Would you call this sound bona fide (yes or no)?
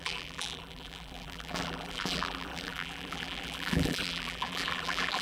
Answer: no